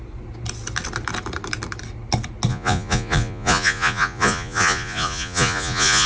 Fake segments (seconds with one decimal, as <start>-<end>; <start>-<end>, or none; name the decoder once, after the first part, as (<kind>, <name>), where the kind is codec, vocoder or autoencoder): 2.5-6.1 (vocoder, Vocos)